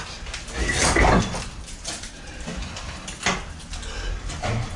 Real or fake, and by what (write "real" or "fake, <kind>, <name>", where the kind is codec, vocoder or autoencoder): real